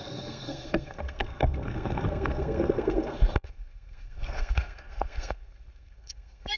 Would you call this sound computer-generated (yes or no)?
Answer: yes